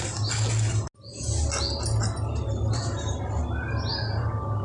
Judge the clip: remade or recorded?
recorded